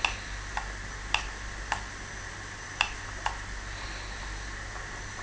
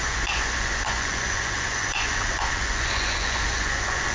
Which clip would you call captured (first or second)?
first